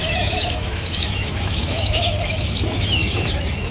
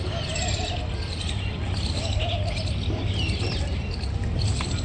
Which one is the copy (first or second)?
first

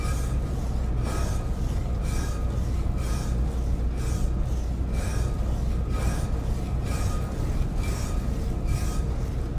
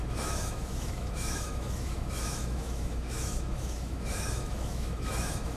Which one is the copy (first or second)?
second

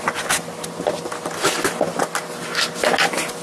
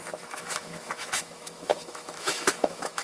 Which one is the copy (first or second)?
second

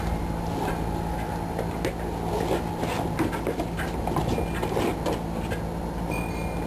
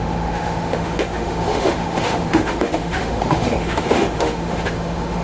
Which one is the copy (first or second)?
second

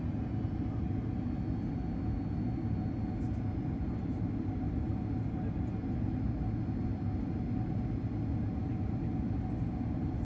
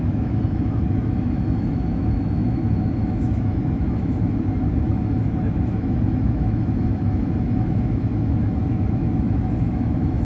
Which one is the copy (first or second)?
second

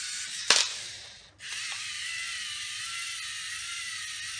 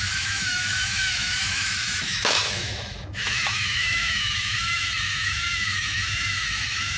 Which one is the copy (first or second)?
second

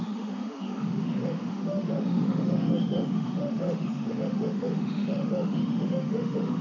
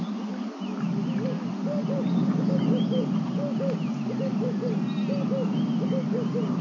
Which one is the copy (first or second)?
first